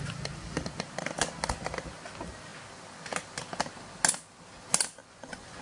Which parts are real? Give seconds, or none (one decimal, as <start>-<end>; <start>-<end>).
0.0-5.0